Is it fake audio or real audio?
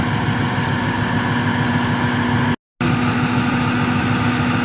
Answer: real